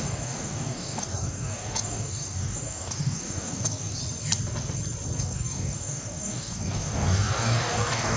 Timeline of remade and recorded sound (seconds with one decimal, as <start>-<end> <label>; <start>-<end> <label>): 0.0-4.0 remade; 4.0-5.2 recorded; 5.2-8.2 remade